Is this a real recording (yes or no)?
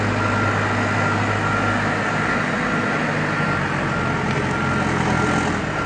yes